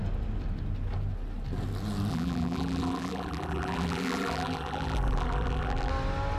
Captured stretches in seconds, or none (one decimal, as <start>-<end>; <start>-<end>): 0.0-2.1; 5.9-6.4